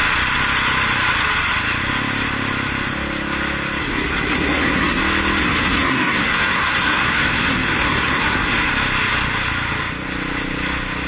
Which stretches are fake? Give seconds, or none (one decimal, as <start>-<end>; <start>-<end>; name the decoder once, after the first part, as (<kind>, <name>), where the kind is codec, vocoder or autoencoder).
3.8-5.0 (codec, SNAC); 5.4-8.7